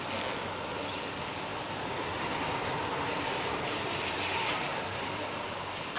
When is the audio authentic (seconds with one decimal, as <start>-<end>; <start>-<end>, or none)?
0.0-1.5; 3.7-4.7; 5.6-6.0